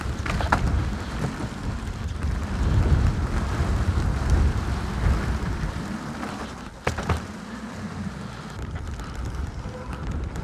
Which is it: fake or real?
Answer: real